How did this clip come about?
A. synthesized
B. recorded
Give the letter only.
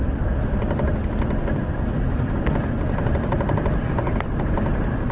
B